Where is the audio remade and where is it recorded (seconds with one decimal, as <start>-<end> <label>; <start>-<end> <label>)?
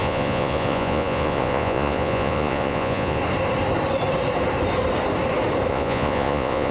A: 0.0-3.2 remade; 3.2-5.7 recorded; 5.7-6.7 remade